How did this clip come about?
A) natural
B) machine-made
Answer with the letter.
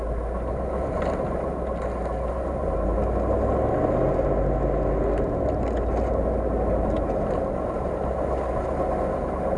A